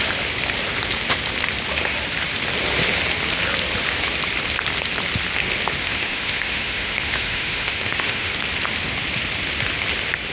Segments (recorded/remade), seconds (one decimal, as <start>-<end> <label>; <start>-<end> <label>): 0.0-5.8 recorded; 5.8-8.3 remade; 8.3-10.3 recorded